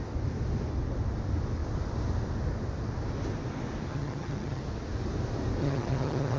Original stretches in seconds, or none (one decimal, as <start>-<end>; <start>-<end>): 0.0-3.9; 4.6-5.6